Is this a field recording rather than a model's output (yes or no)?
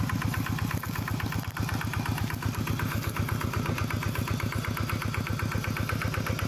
yes